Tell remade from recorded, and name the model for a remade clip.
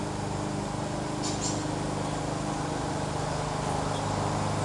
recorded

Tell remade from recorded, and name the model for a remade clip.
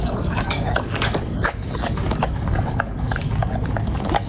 remade, codec, DAC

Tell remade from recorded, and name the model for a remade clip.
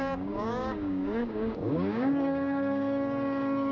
remade, codec, DAC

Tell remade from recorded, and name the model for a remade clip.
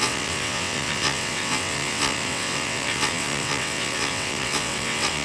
remade, vocoder, WaveNeXt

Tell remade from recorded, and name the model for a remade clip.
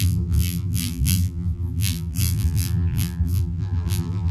remade, vocoder, BigVGAN v2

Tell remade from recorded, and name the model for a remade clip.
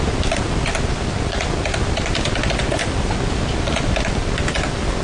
recorded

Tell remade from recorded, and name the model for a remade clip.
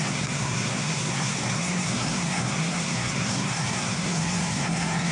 remade, codec, SNAC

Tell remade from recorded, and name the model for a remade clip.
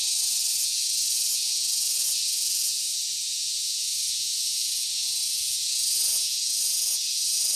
remade, vocoder, Vocos